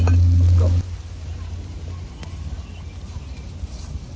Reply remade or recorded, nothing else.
recorded